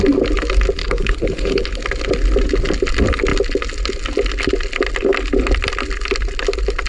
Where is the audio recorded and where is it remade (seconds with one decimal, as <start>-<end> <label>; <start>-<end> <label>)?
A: 0.0-0.8 recorded; 0.8-1.8 remade; 1.8-6.9 recorded